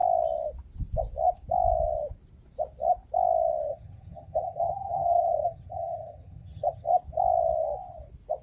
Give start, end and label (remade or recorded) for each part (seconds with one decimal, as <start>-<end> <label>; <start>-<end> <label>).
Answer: 0.0-3.7 recorded; 3.7-6.9 remade; 6.9-8.4 recorded